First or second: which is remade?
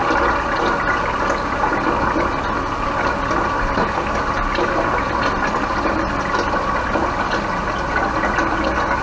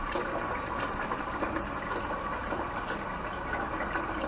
second